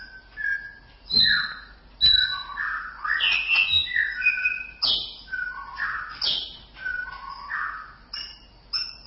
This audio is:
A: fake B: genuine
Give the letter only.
B